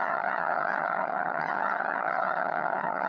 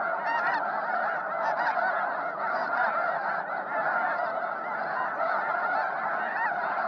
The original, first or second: second